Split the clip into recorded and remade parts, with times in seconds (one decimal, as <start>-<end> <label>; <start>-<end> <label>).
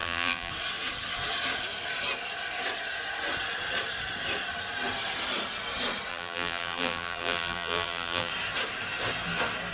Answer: 0.0-0.5 remade; 0.5-6.1 recorded; 6.1-8.3 remade; 8.3-9.7 recorded